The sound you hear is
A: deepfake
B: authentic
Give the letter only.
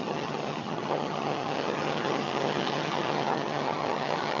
A